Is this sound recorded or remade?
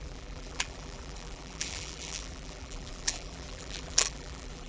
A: remade